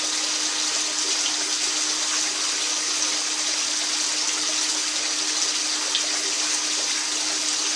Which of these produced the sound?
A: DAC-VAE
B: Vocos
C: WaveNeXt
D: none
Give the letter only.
D